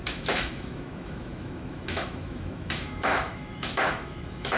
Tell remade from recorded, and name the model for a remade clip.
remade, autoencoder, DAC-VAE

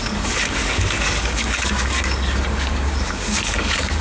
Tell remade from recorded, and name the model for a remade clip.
remade, codec, DAC